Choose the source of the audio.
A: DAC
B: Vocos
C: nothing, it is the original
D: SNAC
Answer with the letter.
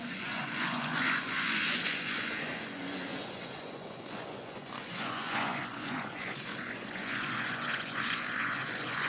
B